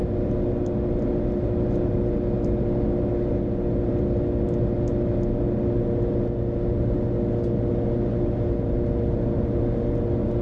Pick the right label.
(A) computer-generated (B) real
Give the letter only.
B